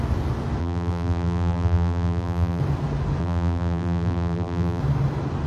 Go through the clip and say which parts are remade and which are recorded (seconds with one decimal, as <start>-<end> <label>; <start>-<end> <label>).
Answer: 0.0-0.6 recorded; 0.6-2.6 remade; 2.6-3.2 recorded; 3.2-4.8 remade; 4.8-5.5 recorded